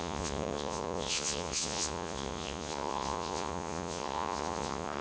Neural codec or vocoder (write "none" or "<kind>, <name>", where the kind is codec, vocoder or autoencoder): vocoder, Vocos